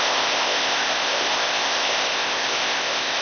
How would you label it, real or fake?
fake